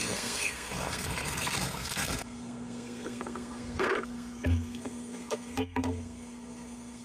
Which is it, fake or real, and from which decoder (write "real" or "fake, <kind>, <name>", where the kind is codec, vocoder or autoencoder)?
fake, codec, SNAC